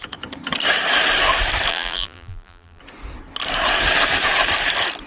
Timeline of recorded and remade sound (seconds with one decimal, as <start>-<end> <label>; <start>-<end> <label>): 0.0-1.7 recorded; 1.7-2.8 remade; 2.8-5.1 recorded